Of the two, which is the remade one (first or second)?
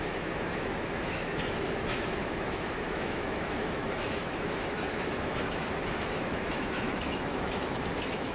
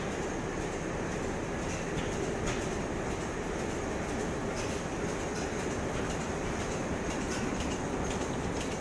first